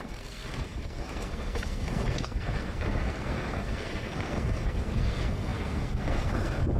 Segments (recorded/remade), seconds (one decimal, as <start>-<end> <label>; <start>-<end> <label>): 0.0-6.8 remade